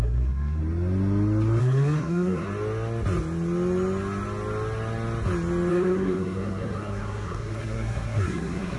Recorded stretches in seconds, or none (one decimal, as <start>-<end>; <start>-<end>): 0.6-1.6; 2.5-5.7